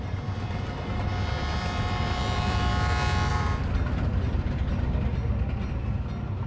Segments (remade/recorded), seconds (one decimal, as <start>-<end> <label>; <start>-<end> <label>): 0.0-2.7 remade; 2.7-3.3 recorded; 3.3-5.1 remade; 5.1-6.5 recorded